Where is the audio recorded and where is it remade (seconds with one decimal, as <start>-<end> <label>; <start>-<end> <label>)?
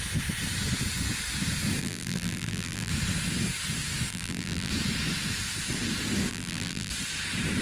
0.0-1.8 recorded; 1.8-2.9 remade; 2.9-4.1 recorded; 4.1-4.7 remade; 4.7-6.3 recorded; 6.3-6.9 remade; 6.9-7.6 recorded